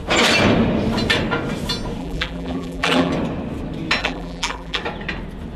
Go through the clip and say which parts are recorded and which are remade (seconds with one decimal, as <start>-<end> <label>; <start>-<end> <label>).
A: 0.0-2.0 recorded; 2.0-3.1 remade; 3.1-4.0 recorded; 4.0-4.8 remade; 4.8-5.6 recorded